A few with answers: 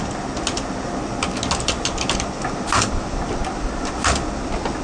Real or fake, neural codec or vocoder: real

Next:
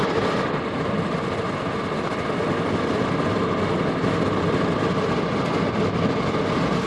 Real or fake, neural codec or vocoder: real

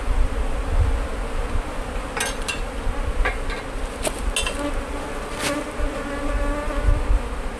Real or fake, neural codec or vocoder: real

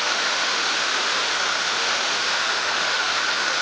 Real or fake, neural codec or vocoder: fake, autoencoder, DAC-VAE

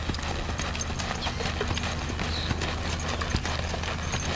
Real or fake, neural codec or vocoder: real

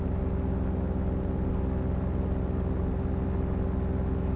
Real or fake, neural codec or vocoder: real